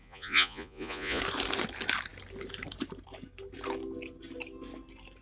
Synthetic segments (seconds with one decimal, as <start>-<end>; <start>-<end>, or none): 0.0-1.2